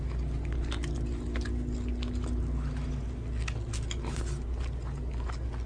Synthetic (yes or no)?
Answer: no